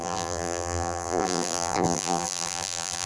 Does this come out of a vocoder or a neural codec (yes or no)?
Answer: yes